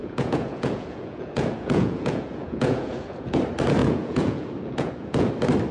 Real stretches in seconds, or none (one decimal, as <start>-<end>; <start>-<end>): 3.4-3.8; 5.3-5.7